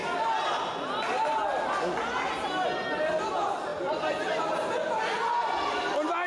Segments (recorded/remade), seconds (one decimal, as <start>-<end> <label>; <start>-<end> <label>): 0.0-6.3 recorded

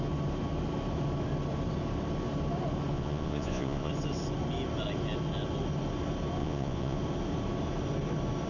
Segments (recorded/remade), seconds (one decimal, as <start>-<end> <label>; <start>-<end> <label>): 0.0-2.9 recorded; 2.9-3.9 remade; 3.9-6.4 recorded; 6.4-7.0 remade; 7.0-8.5 recorded

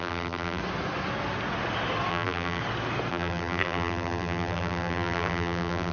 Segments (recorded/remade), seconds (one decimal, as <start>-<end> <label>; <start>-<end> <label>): 0.0-0.6 remade; 0.6-2.1 recorded; 2.1-2.6 remade; 2.6-3.1 recorded; 3.1-5.9 remade